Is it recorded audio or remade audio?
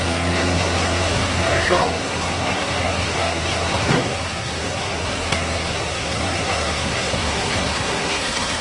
remade